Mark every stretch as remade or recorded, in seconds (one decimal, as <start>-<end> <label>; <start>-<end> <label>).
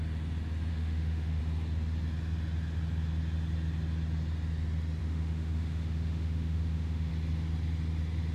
0.0-0.7 recorded; 0.7-1.4 remade; 1.4-5.0 recorded; 5.0-7.1 remade; 7.1-8.3 recorded